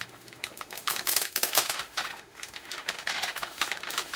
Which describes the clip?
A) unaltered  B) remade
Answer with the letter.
B